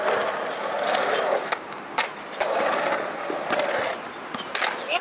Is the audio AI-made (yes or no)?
no